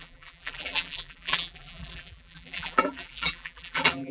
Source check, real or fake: fake